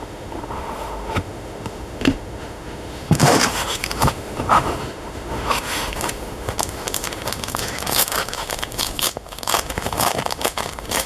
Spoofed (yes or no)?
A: yes